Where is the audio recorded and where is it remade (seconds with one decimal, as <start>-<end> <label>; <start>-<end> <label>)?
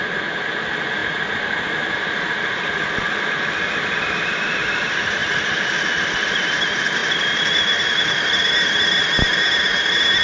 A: 0.0-10.2 recorded